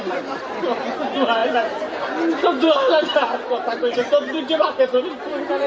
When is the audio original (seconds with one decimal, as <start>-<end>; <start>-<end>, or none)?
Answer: none